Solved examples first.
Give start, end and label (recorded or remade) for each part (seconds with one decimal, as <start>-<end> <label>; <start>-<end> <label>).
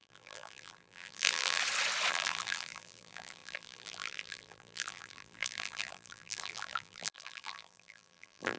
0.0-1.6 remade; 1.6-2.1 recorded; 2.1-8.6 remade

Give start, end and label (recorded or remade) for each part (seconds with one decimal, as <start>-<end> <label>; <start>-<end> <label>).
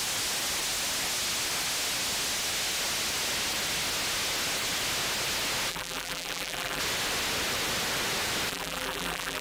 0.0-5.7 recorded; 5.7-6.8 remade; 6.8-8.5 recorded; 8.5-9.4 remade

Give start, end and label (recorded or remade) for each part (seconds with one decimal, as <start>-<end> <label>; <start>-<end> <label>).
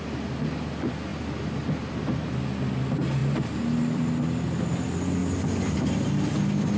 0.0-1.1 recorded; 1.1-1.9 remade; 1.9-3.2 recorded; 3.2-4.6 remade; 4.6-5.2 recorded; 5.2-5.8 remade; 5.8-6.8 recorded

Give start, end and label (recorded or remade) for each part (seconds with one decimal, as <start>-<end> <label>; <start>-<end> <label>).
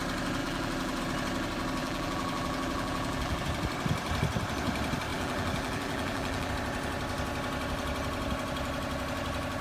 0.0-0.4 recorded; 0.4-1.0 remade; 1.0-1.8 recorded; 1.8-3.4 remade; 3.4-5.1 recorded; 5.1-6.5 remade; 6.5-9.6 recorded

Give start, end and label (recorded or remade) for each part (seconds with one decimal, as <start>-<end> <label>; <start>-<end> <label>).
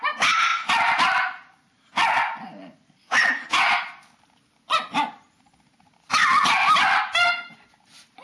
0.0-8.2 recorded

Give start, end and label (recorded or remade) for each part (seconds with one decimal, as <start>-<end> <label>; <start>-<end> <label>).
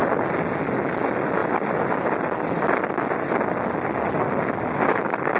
0.0-5.4 recorded